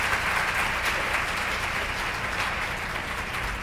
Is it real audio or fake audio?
real